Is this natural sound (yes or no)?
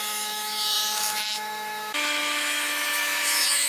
no